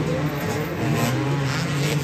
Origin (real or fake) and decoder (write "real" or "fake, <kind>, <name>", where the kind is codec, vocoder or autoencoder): real